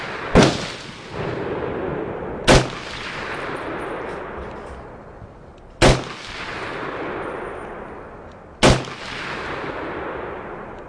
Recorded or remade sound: recorded